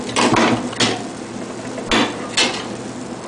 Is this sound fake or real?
real